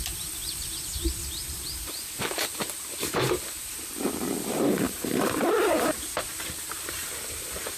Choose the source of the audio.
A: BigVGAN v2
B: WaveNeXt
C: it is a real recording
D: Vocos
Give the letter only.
A